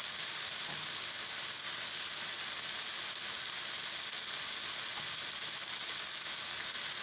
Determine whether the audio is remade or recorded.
recorded